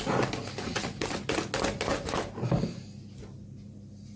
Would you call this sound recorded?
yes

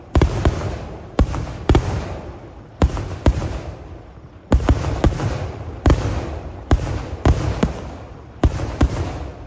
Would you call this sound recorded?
yes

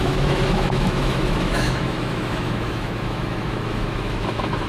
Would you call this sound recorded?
no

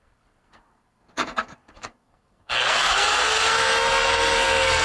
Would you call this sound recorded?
no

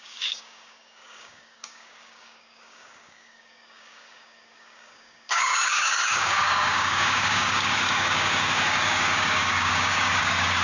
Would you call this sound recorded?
no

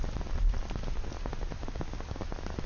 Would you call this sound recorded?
yes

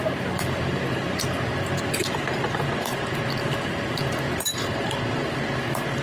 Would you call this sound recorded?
no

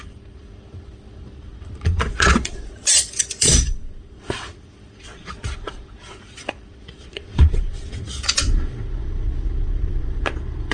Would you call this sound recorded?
no